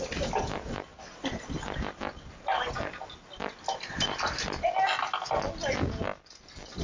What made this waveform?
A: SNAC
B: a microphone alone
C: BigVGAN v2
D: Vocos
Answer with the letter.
B